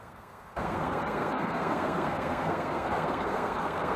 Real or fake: fake